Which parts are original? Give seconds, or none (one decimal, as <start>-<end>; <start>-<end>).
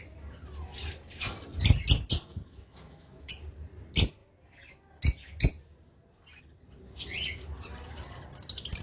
0.0-2.3; 3.3-8.8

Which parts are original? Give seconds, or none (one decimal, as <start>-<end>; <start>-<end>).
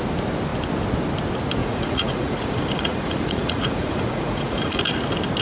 0.0-1.6; 4.8-5.4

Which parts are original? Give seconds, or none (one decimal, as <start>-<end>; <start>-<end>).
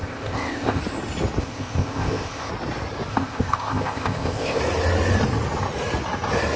0.8-1.4; 2.5-3.1; 4.6-6.6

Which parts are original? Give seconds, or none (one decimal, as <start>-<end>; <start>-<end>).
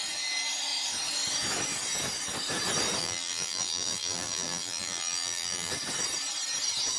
0.0-3.0; 5.7-7.0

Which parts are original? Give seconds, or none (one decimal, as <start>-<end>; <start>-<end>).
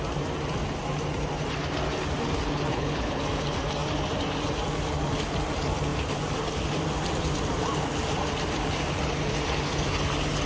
0.0-2.7; 3.2-10.5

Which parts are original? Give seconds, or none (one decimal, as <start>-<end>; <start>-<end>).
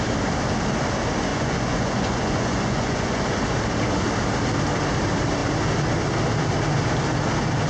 0.0-1.3; 3.2-7.7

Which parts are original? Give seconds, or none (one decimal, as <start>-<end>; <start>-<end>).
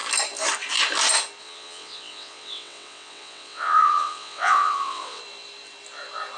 0.0-1.4; 5.2-6.4